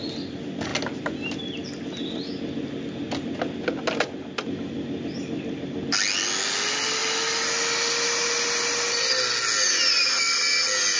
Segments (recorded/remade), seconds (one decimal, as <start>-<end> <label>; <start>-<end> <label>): 0.0-11.0 recorded